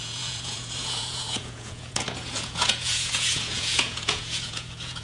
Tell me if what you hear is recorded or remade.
remade